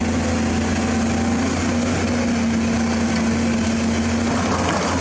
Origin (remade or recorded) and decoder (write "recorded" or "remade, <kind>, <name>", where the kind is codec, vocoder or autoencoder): recorded